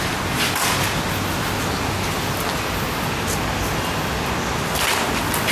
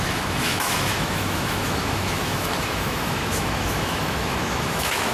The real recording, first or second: first